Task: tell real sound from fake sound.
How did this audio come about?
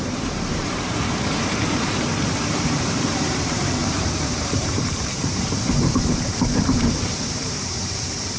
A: fake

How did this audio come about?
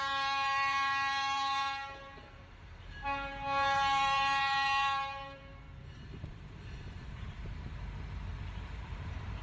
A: fake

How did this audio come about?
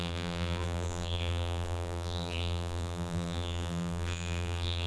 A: fake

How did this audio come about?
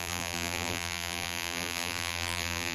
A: fake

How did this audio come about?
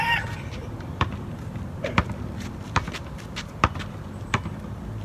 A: fake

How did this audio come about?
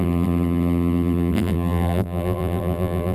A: fake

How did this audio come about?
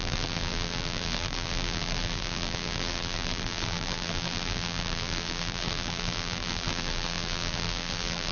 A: fake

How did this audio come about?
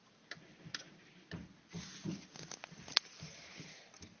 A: fake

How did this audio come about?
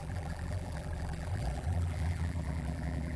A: fake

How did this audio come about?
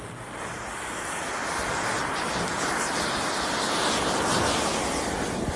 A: fake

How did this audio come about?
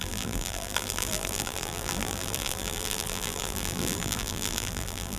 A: fake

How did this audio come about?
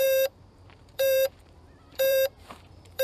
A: fake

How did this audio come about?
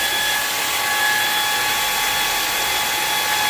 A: real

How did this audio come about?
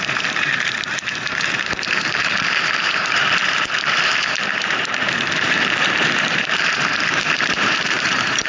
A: fake